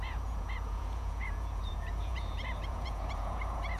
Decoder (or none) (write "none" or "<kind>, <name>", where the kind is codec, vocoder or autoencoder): vocoder, Vocos